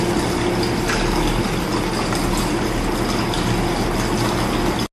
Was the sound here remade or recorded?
recorded